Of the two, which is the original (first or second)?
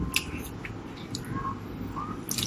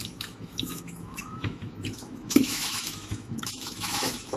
first